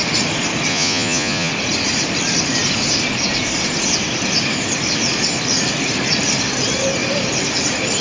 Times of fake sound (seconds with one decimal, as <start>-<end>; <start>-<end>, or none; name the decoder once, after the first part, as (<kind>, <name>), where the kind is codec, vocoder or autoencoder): 0.7-1.5 (vocoder, Vocos)